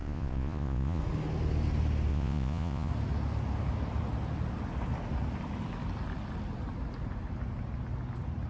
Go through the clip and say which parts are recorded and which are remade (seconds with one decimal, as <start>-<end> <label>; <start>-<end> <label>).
0.0-1.0 remade; 1.0-2.1 recorded; 2.1-2.9 remade; 2.9-8.5 recorded